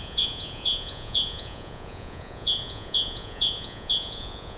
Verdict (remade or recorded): remade